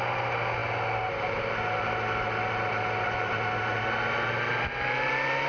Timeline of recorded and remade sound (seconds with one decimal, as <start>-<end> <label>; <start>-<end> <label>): 0.0-5.5 recorded